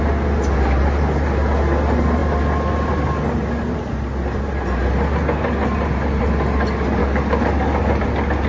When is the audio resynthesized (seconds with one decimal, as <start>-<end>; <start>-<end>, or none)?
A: 7.0-8.0